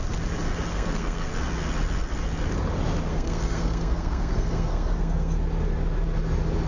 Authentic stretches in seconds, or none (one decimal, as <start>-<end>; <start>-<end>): 0.0-0.7; 1.3-3.1; 5.4-6.7